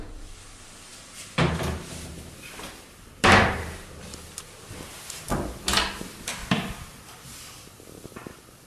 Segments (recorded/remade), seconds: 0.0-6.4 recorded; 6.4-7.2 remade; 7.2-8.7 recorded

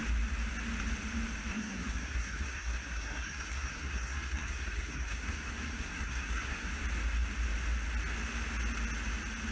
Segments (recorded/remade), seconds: 0.0-1.5 recorded; 1.5-6.7 remade; 6.7-9.5 recorded

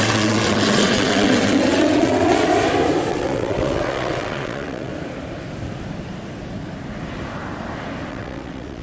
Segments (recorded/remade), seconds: 0.0-2.5 remade; 2.5-3.1 recorded; 3.1-4.9 remade; 4.9-8.1 recorded; 8.1-8.8 remade

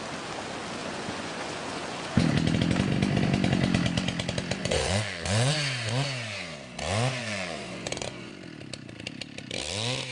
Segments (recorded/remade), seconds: 0.0-0.8 recorded; 0.8-2.2 remade; 2.2-4.6 recorded; 4.6-5.5 remade; 5.5-7.2 recorded; 7.2-8.3 remade; 8.3-10.1 recorded

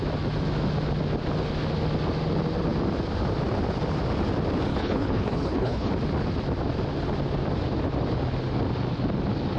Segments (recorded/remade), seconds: 0.0-4.7 recorded; 4.7-5.9 remade; 5.9-9.6 recorded

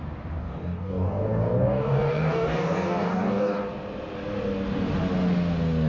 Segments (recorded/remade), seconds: 0.0-0.4 recorded; 0.4-3.6 remade; 3.6-5.9 recorded